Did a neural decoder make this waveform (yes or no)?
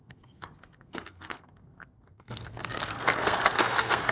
yes